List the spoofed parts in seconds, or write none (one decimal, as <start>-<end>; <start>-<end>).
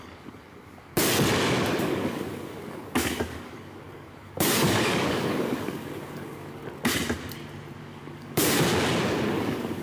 0.0-0.9; 1.8-6.6; 7.8-8.7; 9.4-9.8